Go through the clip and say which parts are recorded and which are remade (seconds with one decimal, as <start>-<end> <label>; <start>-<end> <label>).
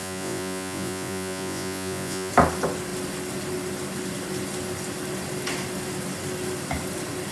0.0-2.3 remade; 2.3-7.3 recorded